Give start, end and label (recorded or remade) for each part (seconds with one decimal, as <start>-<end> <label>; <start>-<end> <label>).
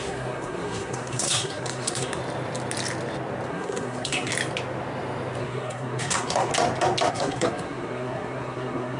0.0-2.2 remade; 2.2-3.5 recorded; 3.5-4.3 remade; 4.3-5.4 recorded; 5.4-6.5 remade; 6.5-7.1 recorded; 7.1-9.0 remade